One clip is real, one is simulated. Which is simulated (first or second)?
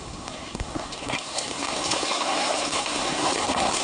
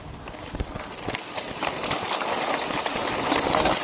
first